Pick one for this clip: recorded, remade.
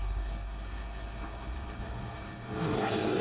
remade